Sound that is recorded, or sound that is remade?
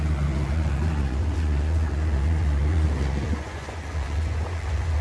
remade